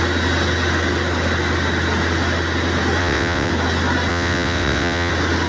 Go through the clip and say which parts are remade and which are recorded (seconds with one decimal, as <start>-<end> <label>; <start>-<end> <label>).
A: 0.0-3.0 recorded; 3.0-3.5 remade; 3.5-4.1 recorded; 4.1-5.1 remade; 5.1-5.5 recorded